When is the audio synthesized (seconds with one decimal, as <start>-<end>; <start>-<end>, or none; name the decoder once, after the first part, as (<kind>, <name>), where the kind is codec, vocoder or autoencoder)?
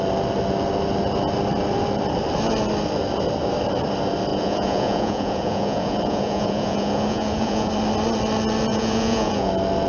4.3-7.7 (vocoder, Vocos); 8.7-9.5